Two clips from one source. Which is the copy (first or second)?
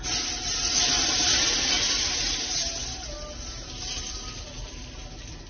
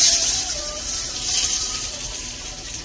second